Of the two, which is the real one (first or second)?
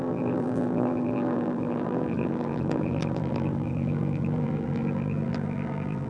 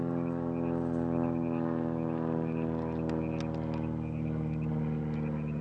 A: second